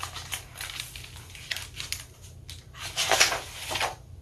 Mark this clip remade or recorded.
recorded